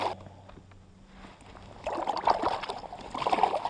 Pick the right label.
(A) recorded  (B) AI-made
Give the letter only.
A